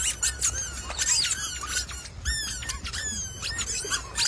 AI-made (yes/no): no